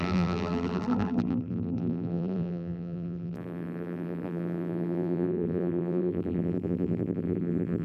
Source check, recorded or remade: remade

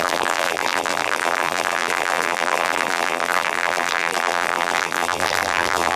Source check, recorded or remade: remade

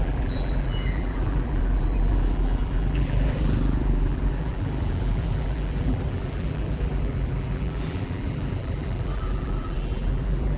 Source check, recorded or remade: remade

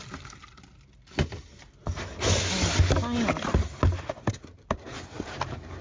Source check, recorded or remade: recorded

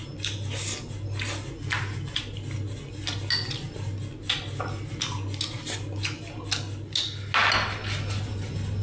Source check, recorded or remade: recorded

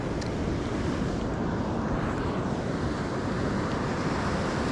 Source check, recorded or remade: recorded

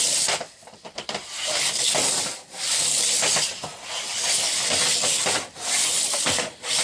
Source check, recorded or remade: recorded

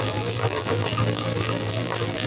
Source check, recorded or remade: remade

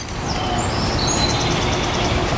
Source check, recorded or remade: recorded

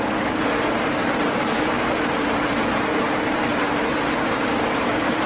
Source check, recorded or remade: remade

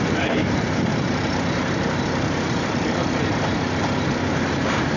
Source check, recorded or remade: remade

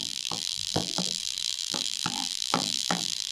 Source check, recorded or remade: remade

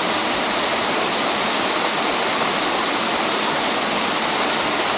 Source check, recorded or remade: recorded